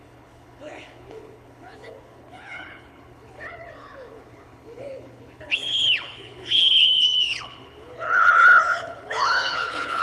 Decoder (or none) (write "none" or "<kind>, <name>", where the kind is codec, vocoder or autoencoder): codec, HILCodec